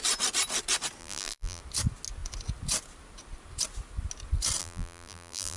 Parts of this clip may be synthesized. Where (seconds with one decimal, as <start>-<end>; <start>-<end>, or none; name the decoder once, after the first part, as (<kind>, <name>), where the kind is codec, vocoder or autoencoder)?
1.0-1.6 (vocoder, BigVGAN v2); 4.6-5.6